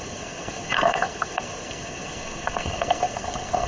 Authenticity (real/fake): fake